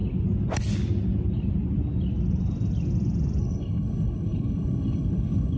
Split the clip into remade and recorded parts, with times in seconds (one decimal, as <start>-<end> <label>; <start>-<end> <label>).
0.0-3.4 recorded; 3.4-5.6 remade